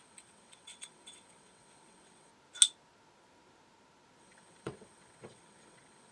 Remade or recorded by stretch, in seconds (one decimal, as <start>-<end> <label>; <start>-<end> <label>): 0.0-2.3 remade; 2.3-4.2 recorded; 4.2-6.1 remade